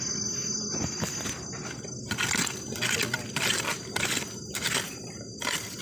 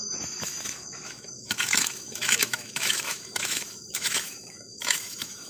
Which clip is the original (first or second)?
first